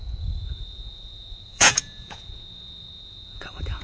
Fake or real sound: fake